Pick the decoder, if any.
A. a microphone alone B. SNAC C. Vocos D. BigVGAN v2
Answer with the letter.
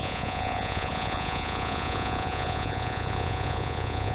C